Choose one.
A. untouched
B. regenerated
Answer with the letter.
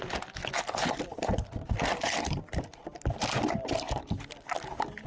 A